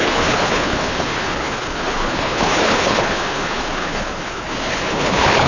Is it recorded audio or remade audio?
remade